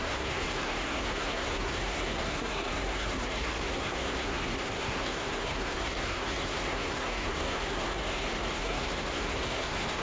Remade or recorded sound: remade